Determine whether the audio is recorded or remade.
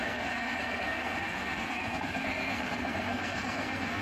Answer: remade